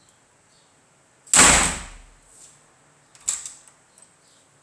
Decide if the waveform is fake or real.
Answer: real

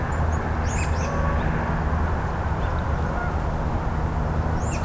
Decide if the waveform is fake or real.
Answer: real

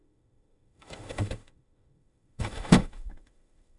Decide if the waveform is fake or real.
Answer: fake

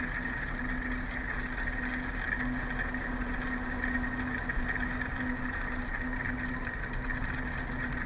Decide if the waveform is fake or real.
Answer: real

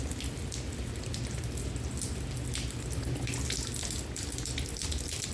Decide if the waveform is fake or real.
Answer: real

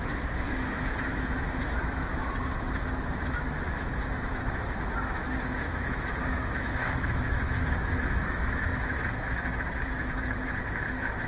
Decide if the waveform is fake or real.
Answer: fake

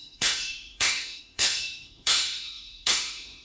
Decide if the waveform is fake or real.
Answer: fake